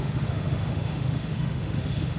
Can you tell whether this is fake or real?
fake